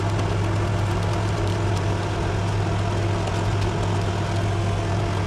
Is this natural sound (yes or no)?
yes